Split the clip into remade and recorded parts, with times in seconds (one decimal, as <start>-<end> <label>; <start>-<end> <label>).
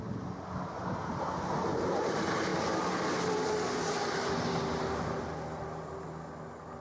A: 0.0-6.8 recorded